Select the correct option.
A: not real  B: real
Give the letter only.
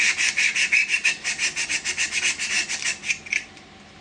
B